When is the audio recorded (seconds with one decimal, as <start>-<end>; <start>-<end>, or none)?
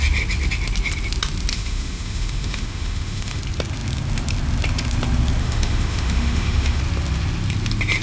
0.0-1.5; 3.4-5.4; 6.8-8.0